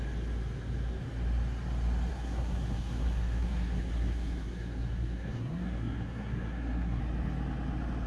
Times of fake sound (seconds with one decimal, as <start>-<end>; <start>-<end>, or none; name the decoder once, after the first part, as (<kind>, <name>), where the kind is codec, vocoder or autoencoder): 2.1-7.0 (codec, SNAC)